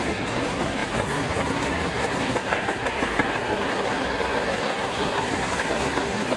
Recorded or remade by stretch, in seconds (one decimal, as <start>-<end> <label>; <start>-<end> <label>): 0.0-6.4 remade